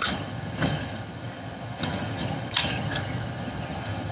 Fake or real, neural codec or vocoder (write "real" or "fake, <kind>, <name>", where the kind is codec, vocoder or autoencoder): fake, vocoder, HiFi-GAN